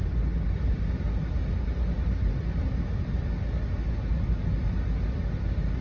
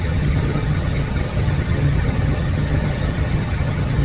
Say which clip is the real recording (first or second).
first